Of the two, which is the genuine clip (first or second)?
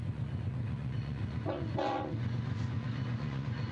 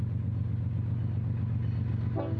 second